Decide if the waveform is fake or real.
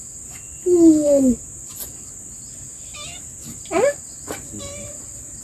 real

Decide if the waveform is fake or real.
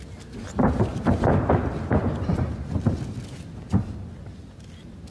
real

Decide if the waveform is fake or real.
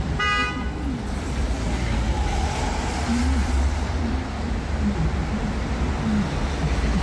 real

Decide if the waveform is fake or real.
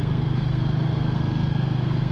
fake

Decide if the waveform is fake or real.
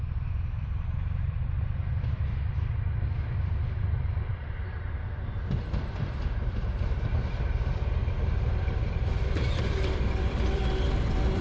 fake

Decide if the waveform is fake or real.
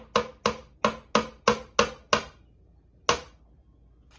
real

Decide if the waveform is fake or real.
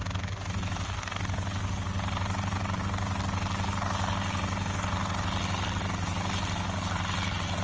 real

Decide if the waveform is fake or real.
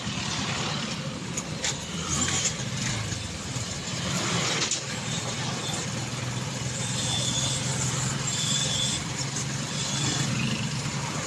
fake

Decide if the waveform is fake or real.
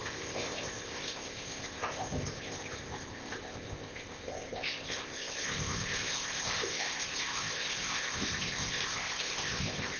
fake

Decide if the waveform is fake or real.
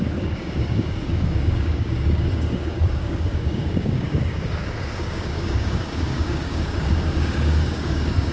fake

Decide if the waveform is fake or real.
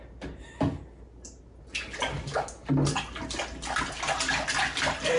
real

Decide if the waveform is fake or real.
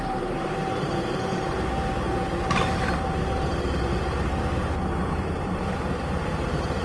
fake